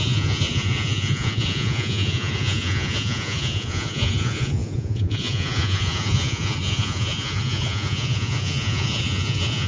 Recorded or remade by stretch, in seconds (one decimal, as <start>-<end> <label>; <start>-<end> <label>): 0.0-9.7 remade